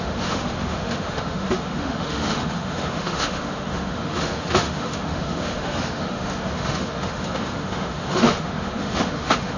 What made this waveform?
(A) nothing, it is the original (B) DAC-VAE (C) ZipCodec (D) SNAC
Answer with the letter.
B